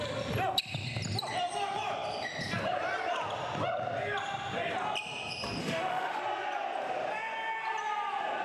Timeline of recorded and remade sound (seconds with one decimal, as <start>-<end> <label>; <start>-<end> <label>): 0.0-5.6 recorded; 5.6-6.2 remade; 6.2-8.4 recorded